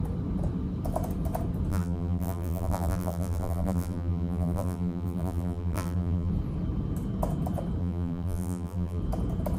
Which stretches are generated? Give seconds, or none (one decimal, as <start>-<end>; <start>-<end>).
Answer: 1.7-6.3; 7.8-9.0